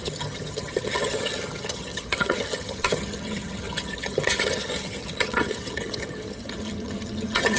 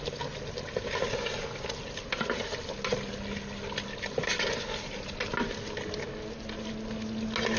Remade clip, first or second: first